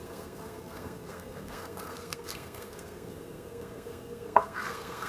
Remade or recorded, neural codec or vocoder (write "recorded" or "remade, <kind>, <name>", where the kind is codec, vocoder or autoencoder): remade, codec, SNAC